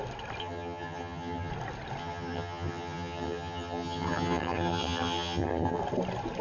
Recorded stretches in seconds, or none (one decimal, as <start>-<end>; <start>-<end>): 0.0-0.4; 1.5-2.0; 5.8-6.4